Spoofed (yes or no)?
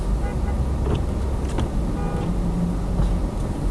no